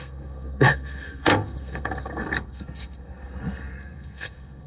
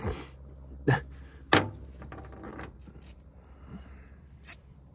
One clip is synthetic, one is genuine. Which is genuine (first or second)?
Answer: second